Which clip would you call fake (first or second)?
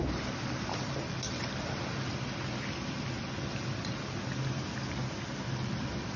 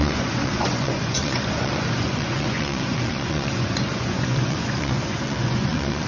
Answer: second